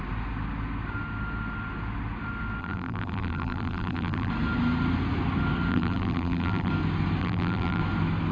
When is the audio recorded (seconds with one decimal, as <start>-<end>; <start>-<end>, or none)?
0.0-2.6; 4.3-5.7; 6.7-7.2; 7.8-8.3